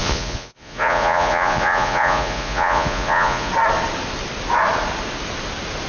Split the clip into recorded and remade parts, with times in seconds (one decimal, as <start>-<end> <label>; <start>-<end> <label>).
0.0-3.5 remade; 3.5-5.9 recorded